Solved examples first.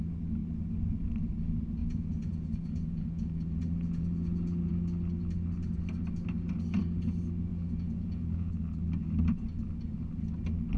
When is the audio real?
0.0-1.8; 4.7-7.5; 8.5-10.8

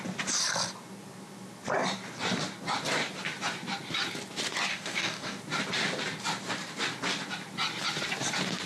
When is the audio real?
0.0-4.7; 5.4-8.7

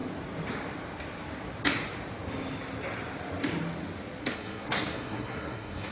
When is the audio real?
0.0-4.2

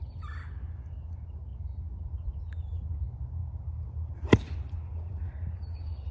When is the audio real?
0.0-6.1

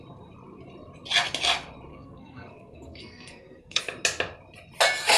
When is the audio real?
0.0-1.9; 3.8-5.2